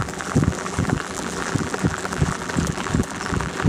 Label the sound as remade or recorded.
remade